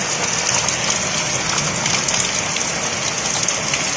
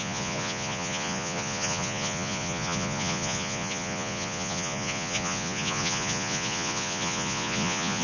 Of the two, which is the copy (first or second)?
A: second